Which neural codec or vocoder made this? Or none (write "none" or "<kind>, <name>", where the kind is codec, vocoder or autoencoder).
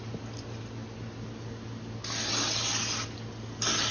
none